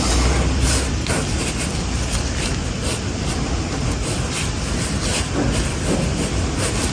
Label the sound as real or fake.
real